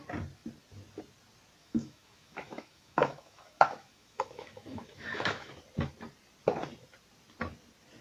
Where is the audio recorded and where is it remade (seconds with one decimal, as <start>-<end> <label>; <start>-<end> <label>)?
0.0-1.6 recorded; 1.6-5.5 remade; 5.5-8.0 recorded